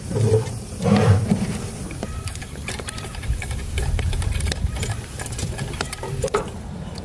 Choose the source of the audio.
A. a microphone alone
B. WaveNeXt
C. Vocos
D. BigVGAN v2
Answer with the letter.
D